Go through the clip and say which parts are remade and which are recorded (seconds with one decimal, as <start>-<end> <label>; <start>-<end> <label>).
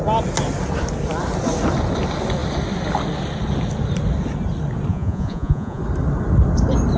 0.0-4.9 recorded; 4.9-5.8 remade; 5.8-7.0 recorded